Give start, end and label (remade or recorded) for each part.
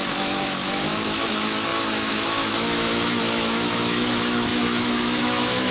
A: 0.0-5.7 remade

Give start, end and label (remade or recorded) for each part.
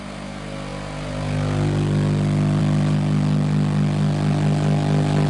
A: 0.0-5.3 recorded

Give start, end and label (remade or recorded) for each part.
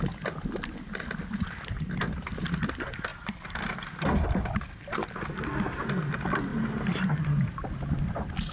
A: 0.0-3.1 recorded; 3.1-3.7 remade; 3.7-6.5 recorded; 6.5-7.2 remade; 7.2-8.5 recorded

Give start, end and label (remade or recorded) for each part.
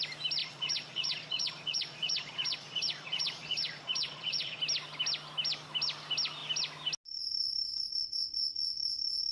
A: 0.0-0.4 recorded; 0.4-4.6 remade; 4.6-9.3 recorded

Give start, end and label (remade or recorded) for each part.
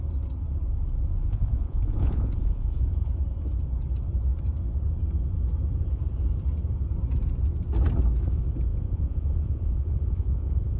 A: 0.0-1.3 recorded; 1.3-3.1 remade; 3.1-8.7 recorded; 8.7-10.8 remade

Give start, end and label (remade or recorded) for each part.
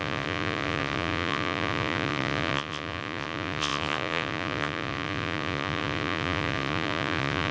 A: 0.0-7.5 remade